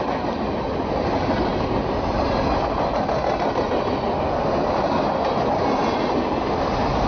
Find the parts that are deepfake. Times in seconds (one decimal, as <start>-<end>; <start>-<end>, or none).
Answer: none